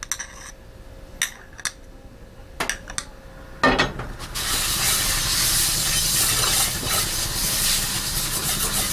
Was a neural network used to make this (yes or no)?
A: no